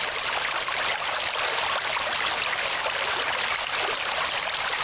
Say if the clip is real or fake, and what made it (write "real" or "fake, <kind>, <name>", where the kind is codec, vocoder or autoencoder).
real